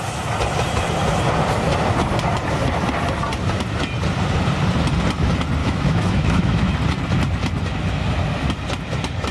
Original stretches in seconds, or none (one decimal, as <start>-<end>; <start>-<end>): 0.0-5.6; 6.7-9.3